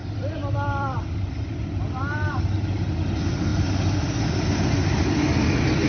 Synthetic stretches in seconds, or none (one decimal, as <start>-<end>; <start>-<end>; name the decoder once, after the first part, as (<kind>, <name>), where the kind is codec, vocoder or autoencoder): 0.0-3.0 (vocoder, BigVGAN v2)